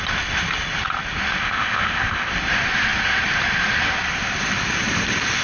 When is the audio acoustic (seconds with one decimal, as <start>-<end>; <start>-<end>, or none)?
0.0-1.4; 2.3-5.4